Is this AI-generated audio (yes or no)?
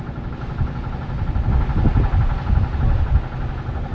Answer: no